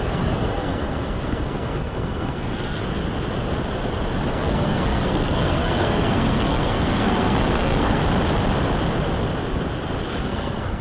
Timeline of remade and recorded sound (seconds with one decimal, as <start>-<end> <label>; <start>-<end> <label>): 0.0-2.8 remade; 2.8-4.3 recorded; 4.3-8.0 remade; 8.0-10.2 recorded; 10.2-10.8 remade